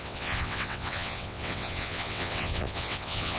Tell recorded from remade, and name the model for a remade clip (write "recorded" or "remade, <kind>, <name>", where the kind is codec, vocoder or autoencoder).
remade, vocoder, WaveNeXt